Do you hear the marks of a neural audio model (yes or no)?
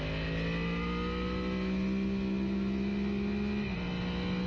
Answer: no